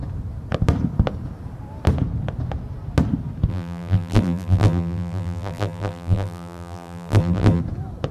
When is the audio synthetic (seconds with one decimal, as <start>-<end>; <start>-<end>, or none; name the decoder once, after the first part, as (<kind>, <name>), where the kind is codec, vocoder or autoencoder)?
3.5-7.6 (vocoder, BigVGAN v2)